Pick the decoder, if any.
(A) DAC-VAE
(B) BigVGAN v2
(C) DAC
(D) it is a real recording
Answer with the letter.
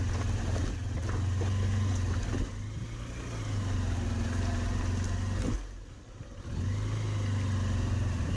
D